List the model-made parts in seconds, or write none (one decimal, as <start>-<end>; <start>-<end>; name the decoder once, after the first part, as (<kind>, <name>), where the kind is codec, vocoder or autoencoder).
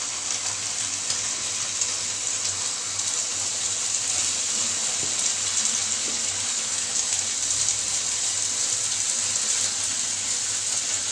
6.5-7.2 (autoencoder, DAC-VAE)